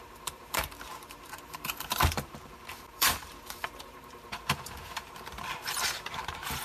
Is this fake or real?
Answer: fake